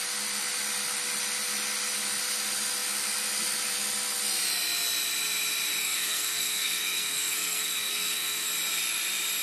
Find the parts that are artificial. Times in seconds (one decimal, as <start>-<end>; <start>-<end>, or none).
5.8-8.5

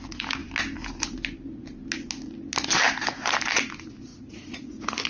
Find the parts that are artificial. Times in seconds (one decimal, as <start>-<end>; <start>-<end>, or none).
4.1-5.1

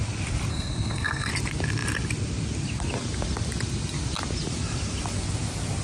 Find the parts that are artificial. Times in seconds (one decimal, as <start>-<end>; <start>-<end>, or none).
0.5-1.3

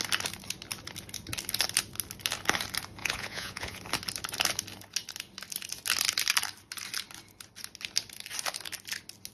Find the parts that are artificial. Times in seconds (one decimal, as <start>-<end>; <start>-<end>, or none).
3.0-3.8

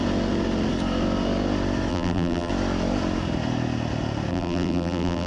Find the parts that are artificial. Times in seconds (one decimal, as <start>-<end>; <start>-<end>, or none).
1.9-2.5; 4.3-5.3

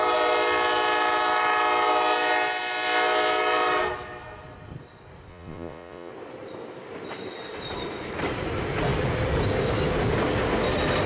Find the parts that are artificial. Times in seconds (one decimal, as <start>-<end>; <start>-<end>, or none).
5.3-6.1

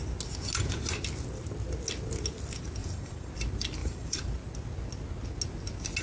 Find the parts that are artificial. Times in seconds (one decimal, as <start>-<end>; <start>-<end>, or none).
2.8-3.3; 3.8-4.3

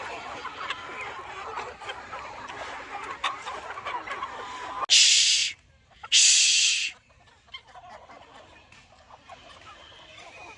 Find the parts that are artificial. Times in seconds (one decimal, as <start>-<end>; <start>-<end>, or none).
none